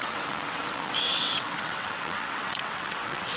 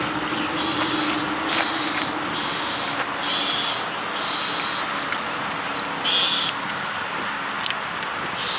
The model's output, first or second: first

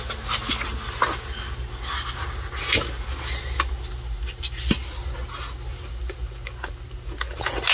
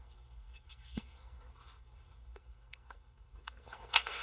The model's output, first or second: second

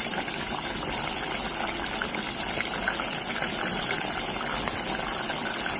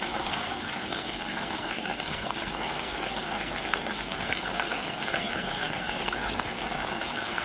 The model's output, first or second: second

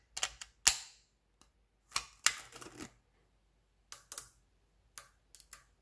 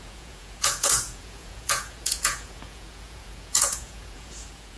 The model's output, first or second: second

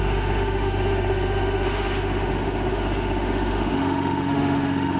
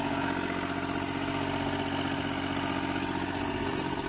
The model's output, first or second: first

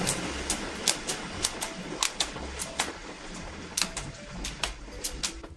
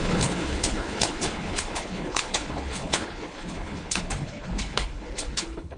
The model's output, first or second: second